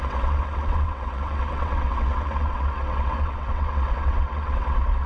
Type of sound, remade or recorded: remade